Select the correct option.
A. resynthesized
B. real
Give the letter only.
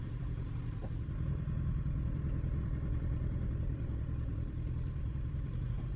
A